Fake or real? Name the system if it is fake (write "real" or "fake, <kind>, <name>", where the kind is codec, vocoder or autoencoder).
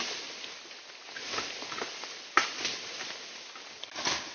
real